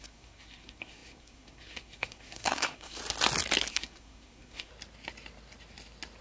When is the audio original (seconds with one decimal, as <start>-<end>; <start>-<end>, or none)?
3.0-3.7; 4.7-6.2